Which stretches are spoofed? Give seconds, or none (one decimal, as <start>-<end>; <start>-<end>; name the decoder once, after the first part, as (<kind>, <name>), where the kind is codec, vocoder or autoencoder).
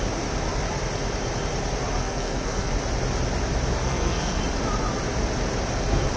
2.0-2.7 (codec, SNAC); 3.8-4.4